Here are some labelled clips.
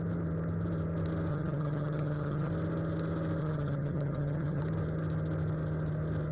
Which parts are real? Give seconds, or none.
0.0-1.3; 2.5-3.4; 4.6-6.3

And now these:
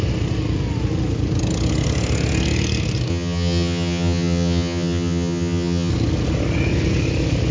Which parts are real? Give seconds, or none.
0.0-3.1; 5.9-7.5

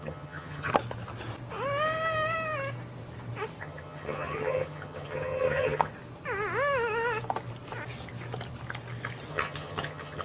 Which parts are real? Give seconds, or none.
0.7-3.6; 5.9-9.3

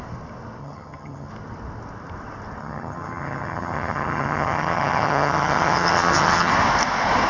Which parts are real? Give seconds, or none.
0.0-0.6; 1.3-2.6; 6.5-7.3

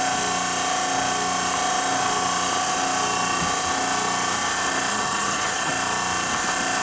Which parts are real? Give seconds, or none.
0.0-4.9; 5.7-6.8

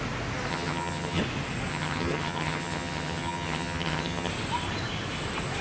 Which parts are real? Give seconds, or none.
0.0-0.5; 1.2-1.7; 4.3-5.6

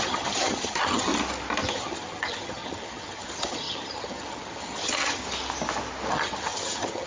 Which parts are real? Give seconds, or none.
1.1-1.7; 5.2-6.1

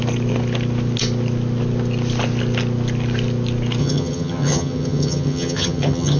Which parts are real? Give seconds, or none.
0.0-3.8